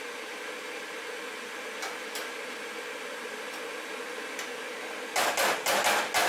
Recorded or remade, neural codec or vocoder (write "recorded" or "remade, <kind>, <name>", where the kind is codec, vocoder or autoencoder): recorded